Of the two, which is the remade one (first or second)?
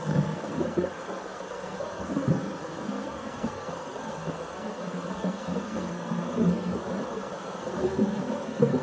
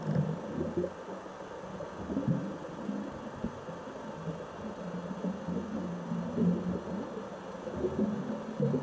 first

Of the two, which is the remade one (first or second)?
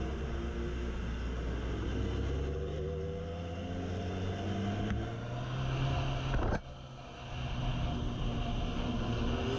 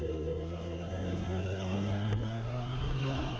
second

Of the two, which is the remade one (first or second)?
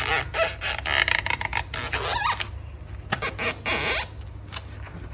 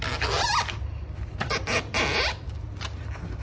second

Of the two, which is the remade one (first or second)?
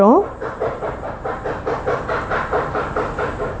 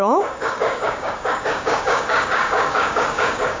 second